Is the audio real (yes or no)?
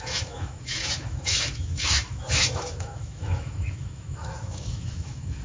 no